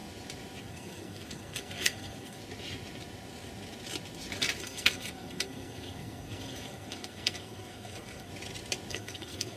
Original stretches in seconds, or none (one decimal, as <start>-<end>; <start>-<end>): 0.0-0.6; 2.4-4.6; 8.3-8.9